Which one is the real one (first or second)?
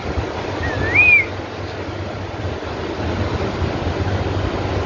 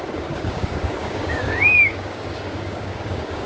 first